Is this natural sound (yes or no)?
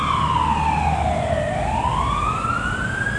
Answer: yes